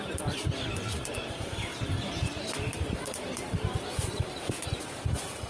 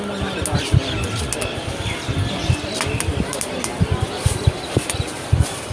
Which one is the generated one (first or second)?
first